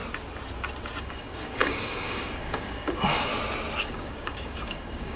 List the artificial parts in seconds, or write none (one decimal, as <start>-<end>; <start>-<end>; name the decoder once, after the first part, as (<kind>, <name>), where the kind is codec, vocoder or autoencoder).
1.0-3.3 (codec, DAC); 3.8-5.2